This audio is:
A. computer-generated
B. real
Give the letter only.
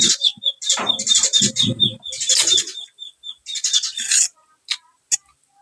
B